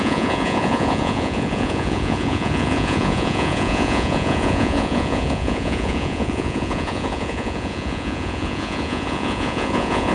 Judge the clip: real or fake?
fake